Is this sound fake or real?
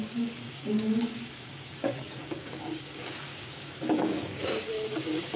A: fake